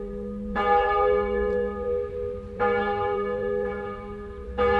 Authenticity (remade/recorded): remade